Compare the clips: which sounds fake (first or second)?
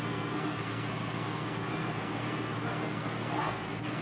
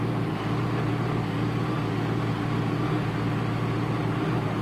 first